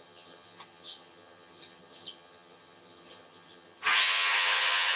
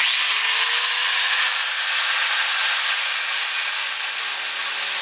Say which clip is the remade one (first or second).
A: first